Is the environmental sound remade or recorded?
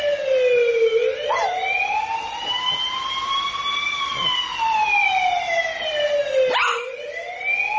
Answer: recorded